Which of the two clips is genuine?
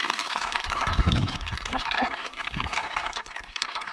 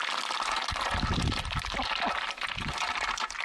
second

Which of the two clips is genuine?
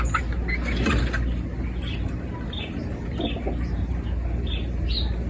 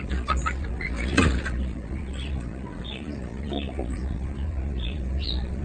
first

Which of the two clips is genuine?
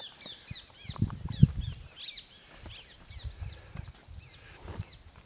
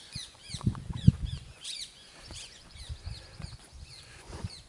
first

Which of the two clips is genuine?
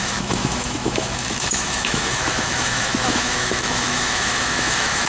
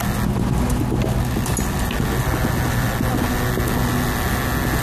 second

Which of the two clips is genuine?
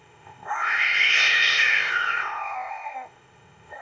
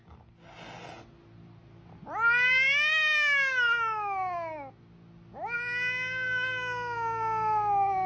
second